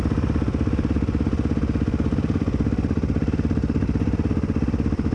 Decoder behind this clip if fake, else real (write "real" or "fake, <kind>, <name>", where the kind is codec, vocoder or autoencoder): real